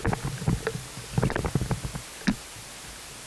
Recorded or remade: recorded